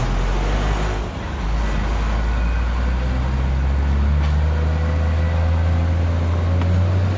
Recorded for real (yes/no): yes